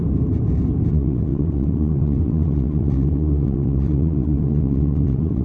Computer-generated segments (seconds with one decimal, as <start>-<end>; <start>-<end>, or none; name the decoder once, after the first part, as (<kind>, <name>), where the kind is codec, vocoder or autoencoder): 0.9-5.4 (vocoder, WaveNeXt)